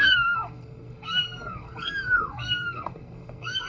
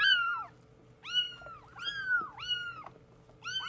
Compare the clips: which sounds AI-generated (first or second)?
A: first